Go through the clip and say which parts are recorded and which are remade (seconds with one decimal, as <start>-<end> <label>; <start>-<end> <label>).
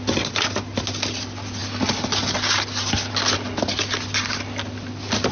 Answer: 0.0-5.3 recorded